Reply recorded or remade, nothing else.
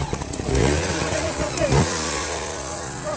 remade